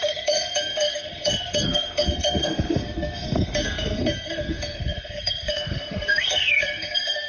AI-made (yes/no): yes